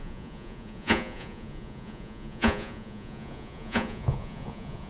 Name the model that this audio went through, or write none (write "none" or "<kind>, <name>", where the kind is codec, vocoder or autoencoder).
vocoder, Vocos